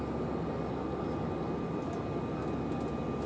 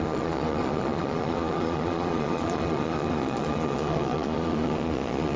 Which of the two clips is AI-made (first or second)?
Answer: second